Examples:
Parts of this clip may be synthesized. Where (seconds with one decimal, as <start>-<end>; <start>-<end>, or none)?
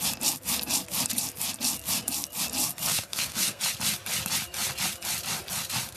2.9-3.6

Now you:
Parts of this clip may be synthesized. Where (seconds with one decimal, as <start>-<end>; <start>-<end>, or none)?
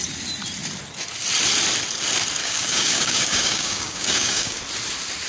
2.4-4.6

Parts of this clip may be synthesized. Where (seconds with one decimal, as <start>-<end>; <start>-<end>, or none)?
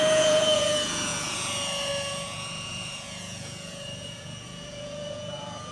0.0-5.7